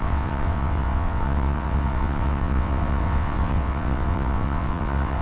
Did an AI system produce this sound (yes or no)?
yes